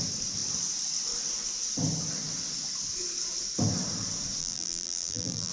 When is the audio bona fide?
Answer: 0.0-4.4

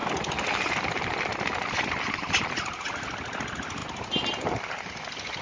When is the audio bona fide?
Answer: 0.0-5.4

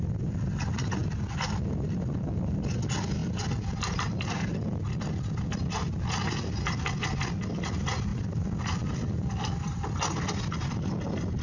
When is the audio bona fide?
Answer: 0.0-1.0; 2.0-8.1; 8.7-11.4